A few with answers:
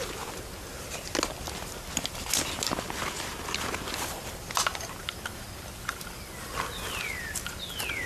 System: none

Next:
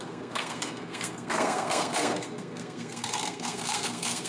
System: codec, SNAC